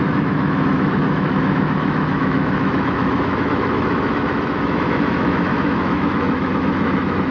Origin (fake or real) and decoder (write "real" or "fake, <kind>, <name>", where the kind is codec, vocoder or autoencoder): fake, autoencoder, DAC-VAE